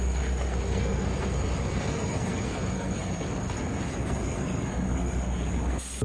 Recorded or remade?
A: remade